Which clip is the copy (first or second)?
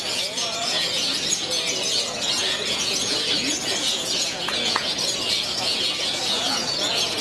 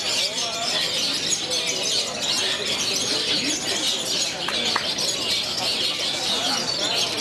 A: first